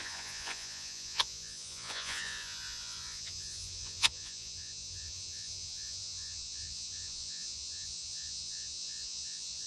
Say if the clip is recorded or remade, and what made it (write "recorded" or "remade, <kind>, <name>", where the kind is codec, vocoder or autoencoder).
remade, vocoder, Vocos